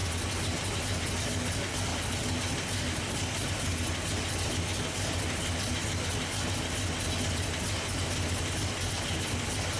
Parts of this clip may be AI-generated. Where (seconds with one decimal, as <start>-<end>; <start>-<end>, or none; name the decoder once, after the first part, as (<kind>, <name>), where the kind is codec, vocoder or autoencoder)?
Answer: none